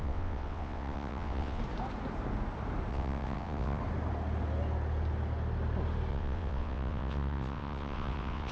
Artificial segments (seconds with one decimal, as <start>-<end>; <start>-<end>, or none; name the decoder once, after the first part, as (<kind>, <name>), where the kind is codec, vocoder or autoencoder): 0.0-1.6 (vocoder, WaveNeXt); 2.9-3.8; 6.1-8.5